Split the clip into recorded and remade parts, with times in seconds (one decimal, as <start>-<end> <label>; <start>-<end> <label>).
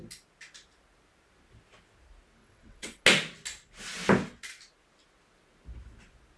0.0-2.4 recorded; 2.4-3.0 remade; 3.0-6.4 recorded